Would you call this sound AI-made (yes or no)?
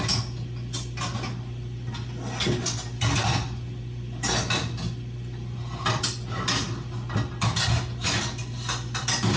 no